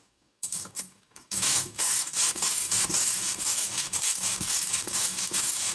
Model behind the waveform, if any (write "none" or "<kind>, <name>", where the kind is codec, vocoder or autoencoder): codec, DAC